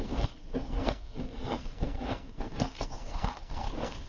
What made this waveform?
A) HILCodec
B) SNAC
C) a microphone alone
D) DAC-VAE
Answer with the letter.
B